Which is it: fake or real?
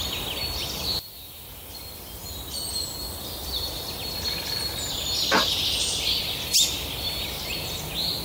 real